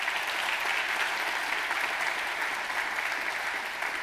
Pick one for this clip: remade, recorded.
recorded